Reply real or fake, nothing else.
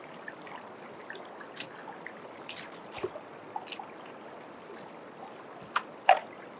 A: real